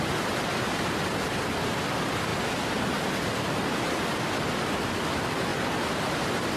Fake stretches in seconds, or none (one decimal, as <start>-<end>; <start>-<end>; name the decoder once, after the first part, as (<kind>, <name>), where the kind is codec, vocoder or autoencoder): none